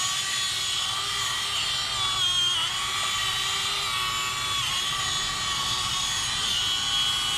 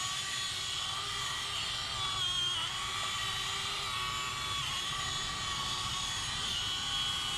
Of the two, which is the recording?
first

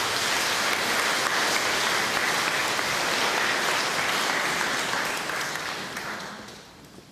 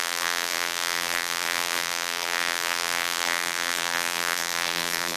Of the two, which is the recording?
first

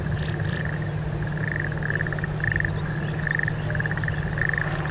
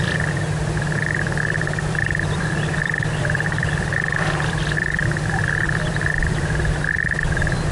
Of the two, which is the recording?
first